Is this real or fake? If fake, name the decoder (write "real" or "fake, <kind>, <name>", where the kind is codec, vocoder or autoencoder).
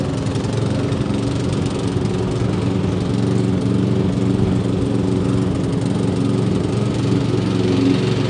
real